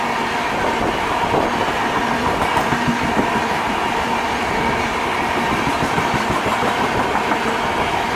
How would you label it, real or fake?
real